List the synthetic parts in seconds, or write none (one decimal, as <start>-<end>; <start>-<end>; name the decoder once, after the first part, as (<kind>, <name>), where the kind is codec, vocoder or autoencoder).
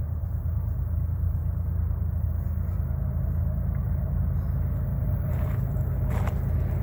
0.0-4.1 (vocoder, BigVGAN v2); 4.9-6.1